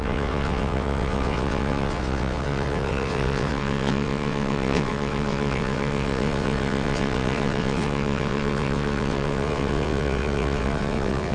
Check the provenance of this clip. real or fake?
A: fake